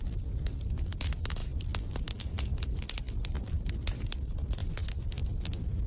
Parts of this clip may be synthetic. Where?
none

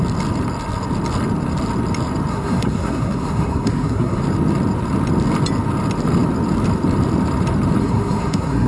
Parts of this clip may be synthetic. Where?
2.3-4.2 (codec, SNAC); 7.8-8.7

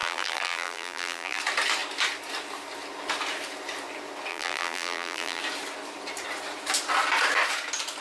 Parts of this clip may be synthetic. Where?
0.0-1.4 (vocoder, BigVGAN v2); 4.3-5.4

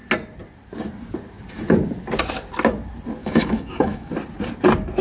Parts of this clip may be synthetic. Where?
3.2-4.1 (autoencoder, DAC-VAE)